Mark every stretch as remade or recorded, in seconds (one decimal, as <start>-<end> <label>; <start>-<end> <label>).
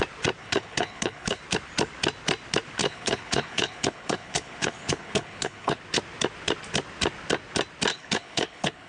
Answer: 0.0-0.4 recorded; 0.4-1.4 remade; 1.4-2.8 recorded; 2.8-5.8 remade; 5.8-7.9 recorded; 7.9-8.9 remade